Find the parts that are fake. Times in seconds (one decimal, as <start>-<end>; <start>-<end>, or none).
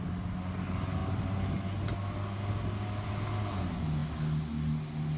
none